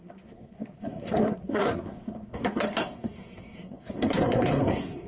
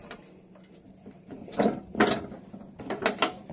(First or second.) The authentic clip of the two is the second